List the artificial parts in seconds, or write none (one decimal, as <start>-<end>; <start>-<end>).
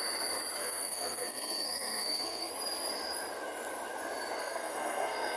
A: 0.6-2.5; 4.4-5.4